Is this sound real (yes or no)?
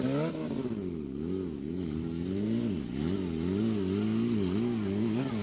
yes